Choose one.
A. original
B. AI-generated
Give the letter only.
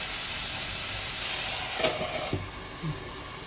A